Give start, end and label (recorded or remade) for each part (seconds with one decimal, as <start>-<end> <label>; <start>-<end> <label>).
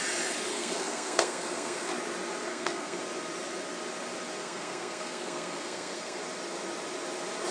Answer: 0.0-0.5 recorded; 0.5-1.9 remade; 1.9-2.5 recorded; 2.5-3.0 remade; 3.0-4.4 recorded; 4.4-6.2 remade; 6.2-7.5 recorded